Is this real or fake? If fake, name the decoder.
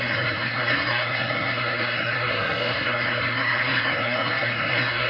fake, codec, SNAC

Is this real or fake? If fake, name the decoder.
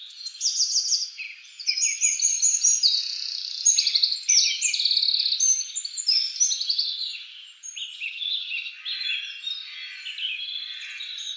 real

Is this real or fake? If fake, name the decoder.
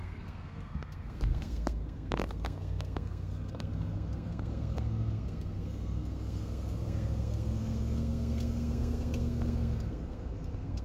fake, codec, SNAC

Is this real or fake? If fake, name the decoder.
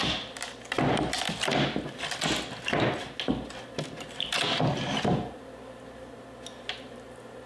real